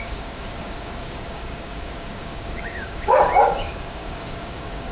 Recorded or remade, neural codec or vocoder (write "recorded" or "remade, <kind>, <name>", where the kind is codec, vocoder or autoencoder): remade, codec, DAC